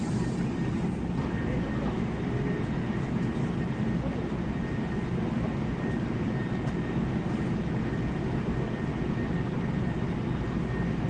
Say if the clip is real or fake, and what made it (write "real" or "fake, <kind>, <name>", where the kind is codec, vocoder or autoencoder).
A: real